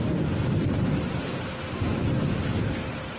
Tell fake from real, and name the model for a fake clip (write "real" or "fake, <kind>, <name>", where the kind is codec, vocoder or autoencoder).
real